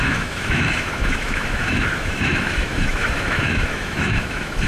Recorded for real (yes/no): no